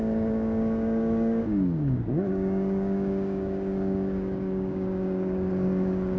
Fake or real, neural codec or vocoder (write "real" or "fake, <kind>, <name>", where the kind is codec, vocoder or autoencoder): fake, codec, DAC